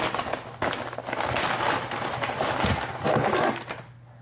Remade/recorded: recorded